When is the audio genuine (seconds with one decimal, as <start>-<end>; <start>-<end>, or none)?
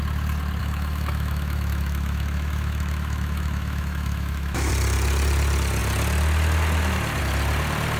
0.0-0.6; 4.7-8.0